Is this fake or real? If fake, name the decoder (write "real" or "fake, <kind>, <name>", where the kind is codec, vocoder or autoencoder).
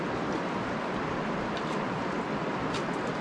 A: real